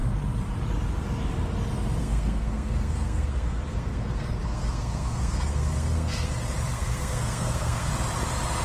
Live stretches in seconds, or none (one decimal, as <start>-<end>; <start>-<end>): 0.0-2.0; 6.3-6.7; 7.9-8.6